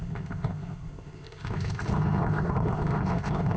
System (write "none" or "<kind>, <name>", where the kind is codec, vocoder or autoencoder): codec, ZipCodec